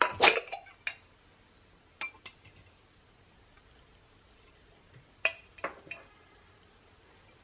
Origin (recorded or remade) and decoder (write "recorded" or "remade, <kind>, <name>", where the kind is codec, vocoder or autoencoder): recorded